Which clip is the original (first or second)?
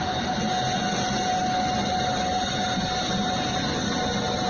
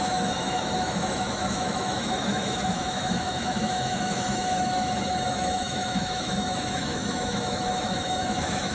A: first